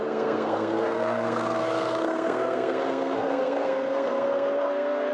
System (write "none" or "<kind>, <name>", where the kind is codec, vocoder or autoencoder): codec, SNAC